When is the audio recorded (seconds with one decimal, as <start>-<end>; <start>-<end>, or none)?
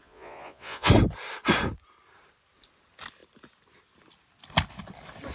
0.9-5.3